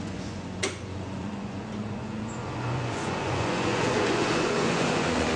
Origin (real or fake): fake